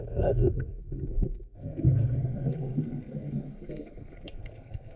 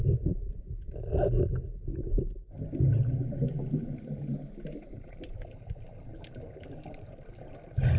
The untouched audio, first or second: second